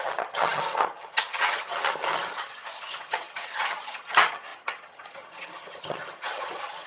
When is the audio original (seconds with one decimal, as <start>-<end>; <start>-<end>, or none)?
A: none